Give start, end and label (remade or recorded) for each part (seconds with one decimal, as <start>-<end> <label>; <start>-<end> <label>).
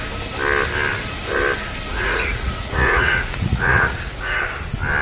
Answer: 0.0-1.9 recorded; 1.9-4.4 remade; 4.4-5.0 recorded